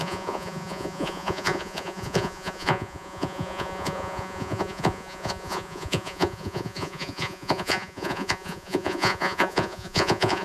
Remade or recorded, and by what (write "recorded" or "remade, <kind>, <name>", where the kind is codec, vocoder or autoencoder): remade, vocoder, Vocos